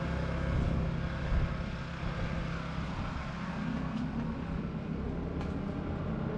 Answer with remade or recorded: recorded